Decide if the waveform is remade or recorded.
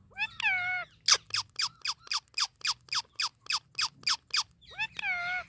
recorded